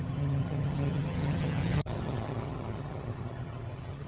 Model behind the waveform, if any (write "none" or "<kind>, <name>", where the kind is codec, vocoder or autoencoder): vocoder, HiFi-GAN